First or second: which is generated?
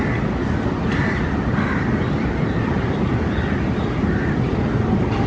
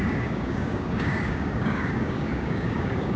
second